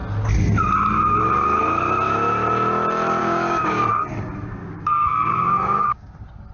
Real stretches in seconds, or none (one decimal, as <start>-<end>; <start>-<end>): 0.0-3.2; 3.9-4.6; 6.1-6.5